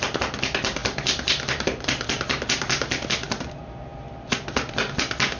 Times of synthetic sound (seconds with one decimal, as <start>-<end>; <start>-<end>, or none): 0.8-2.5